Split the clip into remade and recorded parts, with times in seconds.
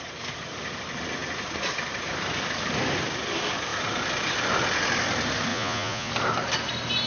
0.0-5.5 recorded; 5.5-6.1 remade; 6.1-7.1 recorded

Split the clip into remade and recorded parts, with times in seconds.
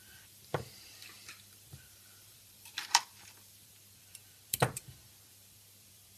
0.0-6.2 remade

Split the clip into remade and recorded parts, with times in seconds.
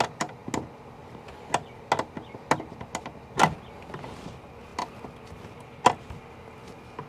0.0-7.1 recorded